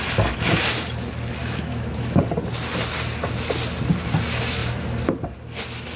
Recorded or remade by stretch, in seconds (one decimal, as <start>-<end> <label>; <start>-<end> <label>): 0.0-1.4 recorded; 1.4-2.2 remade; 2.2-6.0 recorded